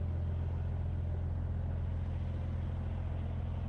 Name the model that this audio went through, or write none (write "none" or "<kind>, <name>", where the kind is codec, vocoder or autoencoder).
none